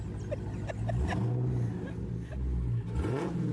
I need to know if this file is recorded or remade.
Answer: recorded